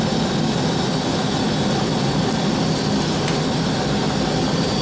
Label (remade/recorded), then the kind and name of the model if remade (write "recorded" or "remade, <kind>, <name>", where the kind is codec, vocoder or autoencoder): recorded